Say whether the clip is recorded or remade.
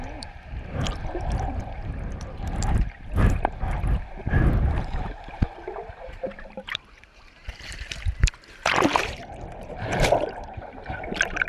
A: remade